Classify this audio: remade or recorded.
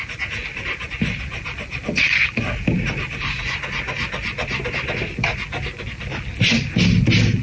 recorded